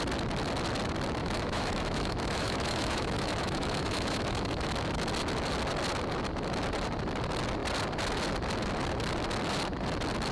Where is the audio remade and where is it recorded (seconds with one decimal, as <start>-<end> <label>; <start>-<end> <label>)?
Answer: 0.0-1.2 recorded; 1.2-4.7 remade; 4.7-10.3 recorded